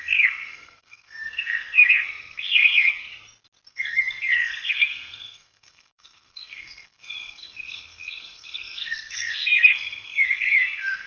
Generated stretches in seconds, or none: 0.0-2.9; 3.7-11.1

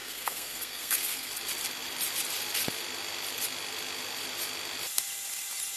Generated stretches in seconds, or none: 0.0-1.3

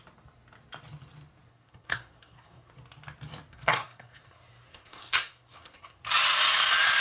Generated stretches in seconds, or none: 1.5-2.7; 3.5-6.0

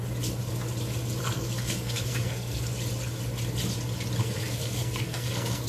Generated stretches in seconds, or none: 1.2-2.6; 4.2-5.7